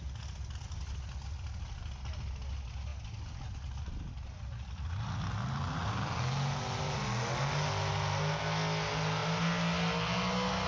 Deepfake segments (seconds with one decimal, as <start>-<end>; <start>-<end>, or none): none